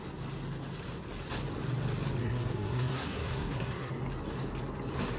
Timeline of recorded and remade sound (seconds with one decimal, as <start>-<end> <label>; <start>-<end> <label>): 0.0-2.2 recorded; 2.2-3.9 remade; 3.9-5.2 recorded